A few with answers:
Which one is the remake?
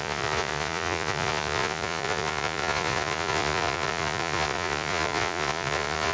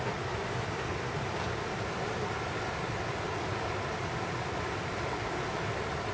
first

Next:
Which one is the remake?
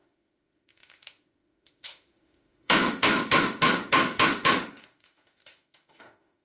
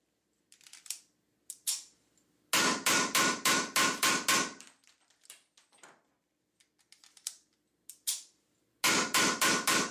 first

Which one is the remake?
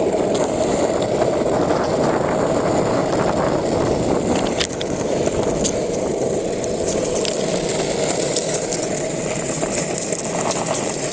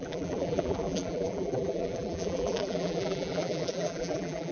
second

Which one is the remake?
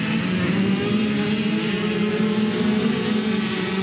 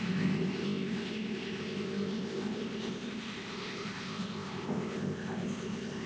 second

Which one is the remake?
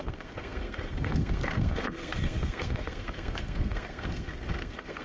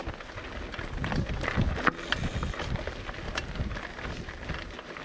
first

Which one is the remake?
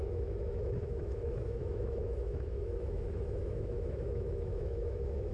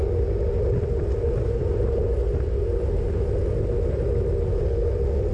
first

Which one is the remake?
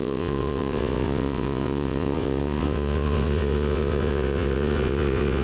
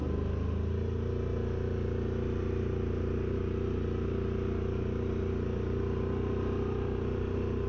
first